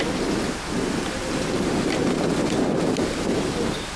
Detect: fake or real real